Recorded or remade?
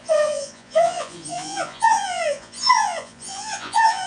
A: remade